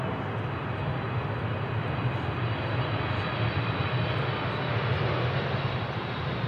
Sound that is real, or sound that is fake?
real